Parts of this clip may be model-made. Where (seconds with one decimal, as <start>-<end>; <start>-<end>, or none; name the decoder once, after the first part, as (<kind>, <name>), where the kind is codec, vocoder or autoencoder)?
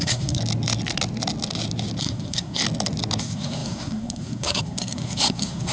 0.0-0.4 (codec, SNAC); 2.0-2.6; 3.2-5.7